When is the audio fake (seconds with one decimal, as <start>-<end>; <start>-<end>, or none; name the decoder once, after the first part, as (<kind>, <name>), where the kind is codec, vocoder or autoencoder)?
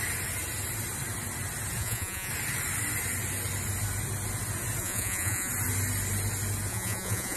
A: 1.8-2.3 (vocoder, Vocos); 4.8-5.5; 6.7-7.4